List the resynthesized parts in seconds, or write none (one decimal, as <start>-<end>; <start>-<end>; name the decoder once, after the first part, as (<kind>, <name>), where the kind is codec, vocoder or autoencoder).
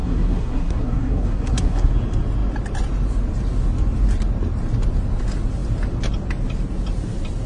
0.0-1.9 (codec, SNAC)